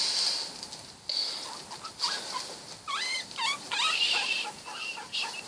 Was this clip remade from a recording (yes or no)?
no